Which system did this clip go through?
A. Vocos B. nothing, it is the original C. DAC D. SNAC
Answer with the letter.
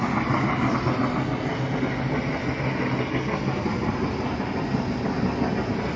B